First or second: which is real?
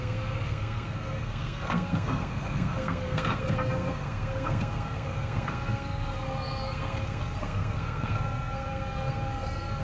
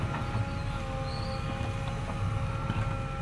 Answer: second